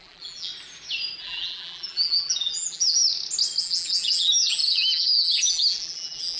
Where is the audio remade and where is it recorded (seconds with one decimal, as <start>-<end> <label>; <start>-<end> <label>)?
0.0-0.5 remade; 0.5-1.2 recorded; 1.2-3.0 remade; 3.0-3.6 recorded; 3.6-6.4 remade